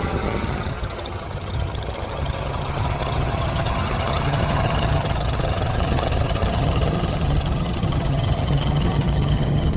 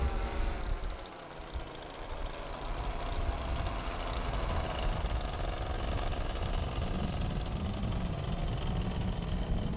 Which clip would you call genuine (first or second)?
second